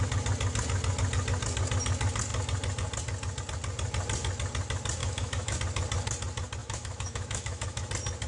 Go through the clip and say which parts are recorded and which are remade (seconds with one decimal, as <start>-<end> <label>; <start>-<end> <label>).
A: 0.0-5.0 recorded; 5.0-5.6 remade; 5.6-6.6 recorded; 6.6-7.9 remade; 7.9-8.3 recorded